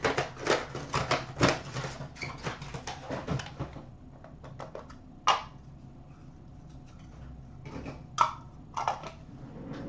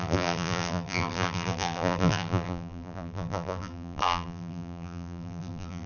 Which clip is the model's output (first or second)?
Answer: second